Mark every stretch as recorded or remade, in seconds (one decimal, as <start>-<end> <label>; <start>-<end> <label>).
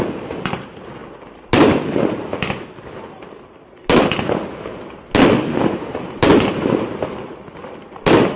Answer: 0.0-8.4 recorded